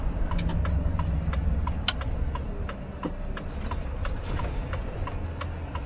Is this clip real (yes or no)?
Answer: yes